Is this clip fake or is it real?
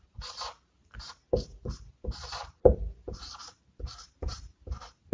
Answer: fake